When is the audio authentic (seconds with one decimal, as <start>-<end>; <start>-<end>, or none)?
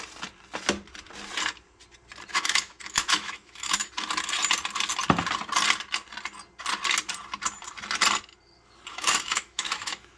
0.0-2.3; 3.8-8.9